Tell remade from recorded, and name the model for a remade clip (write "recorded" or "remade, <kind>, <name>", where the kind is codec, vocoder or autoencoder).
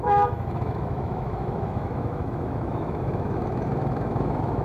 remade, autoencoder, DAC-VAE